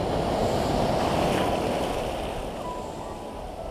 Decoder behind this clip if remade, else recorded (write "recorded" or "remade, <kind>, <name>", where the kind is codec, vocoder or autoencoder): recorded